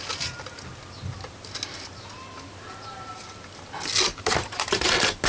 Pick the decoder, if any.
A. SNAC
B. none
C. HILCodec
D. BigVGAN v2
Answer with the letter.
B